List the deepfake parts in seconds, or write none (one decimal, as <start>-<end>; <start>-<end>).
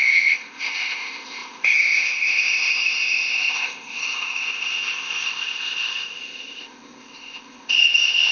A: 0.0-8.3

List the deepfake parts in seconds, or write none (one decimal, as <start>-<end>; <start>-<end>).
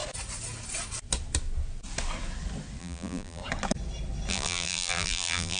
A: 2.8-3.4; 4.3-5.6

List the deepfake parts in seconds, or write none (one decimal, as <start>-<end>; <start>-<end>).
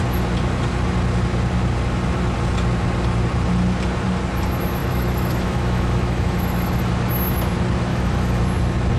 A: 4.8-6.8; 7.9-8.4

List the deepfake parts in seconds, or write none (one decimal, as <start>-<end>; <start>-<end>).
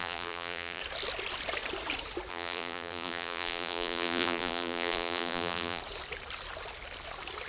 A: 0.0-0.8; 2.3-5.8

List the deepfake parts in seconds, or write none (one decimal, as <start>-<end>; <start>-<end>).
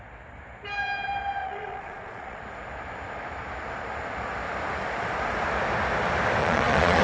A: 1.4-2.4; 6.4-7.0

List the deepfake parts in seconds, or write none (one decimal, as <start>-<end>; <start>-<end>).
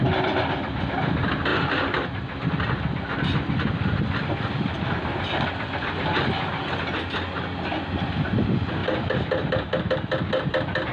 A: none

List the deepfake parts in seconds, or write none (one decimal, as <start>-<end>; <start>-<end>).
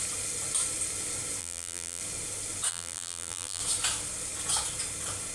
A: 1.4-2.0; 2.7-3.6